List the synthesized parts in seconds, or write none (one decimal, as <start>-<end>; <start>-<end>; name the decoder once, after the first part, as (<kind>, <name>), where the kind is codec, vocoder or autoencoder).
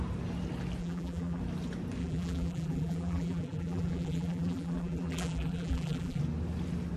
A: 0.8-1.4 (vocoder, BigVGAN v2); 2.0-6.2